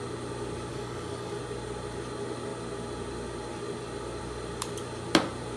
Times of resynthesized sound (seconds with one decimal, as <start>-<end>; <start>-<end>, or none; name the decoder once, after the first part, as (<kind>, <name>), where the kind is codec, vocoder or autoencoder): 0.7-1.4 (codec, DAC)

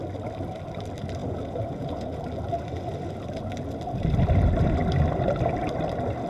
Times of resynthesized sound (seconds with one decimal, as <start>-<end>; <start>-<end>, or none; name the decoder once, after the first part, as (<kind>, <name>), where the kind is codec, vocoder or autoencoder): 1.2-2.2 (vocoder, Vocos)

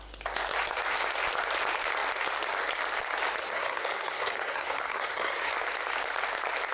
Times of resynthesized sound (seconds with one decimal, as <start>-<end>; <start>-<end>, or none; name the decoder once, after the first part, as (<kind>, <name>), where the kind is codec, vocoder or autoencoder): 3.4-5.5 (codec, SNAC)

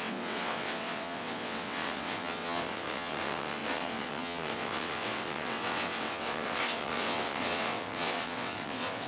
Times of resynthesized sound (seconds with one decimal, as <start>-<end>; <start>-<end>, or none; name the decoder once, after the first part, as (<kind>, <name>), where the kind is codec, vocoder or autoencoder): 0.0-9.1 (vocoder, WaveNeXt)

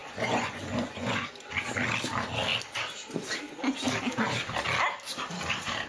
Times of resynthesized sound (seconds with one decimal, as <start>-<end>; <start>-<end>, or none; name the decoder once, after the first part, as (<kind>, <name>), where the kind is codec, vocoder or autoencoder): 0.0-1.5 (vocoder, Vocos)

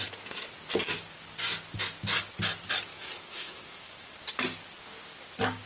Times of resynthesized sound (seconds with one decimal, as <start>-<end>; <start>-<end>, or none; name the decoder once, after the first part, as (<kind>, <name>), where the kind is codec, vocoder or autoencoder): 2.9-4.1 (autoencoder, DAC-VAE)